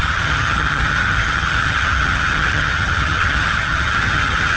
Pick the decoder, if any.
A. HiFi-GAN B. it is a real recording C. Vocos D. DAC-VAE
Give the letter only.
A